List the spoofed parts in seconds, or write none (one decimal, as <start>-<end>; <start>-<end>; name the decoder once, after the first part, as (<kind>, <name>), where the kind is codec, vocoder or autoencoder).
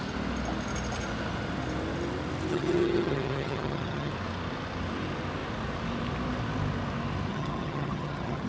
2.5-4.1 (vocoder, HiFi-GAN); 7.3-8.5